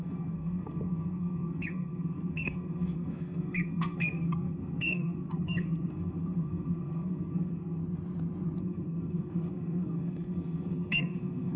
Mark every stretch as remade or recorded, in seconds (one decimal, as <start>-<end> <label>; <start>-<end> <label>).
0.0-7.8 remade; 7.8-8.6 recorded; 8.6-11.6 remade